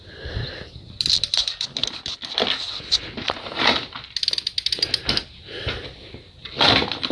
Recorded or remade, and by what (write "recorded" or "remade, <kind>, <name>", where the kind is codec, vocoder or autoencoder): recorded